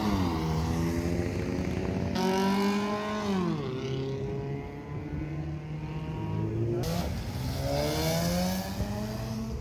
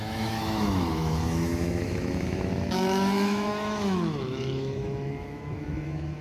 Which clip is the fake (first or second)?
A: second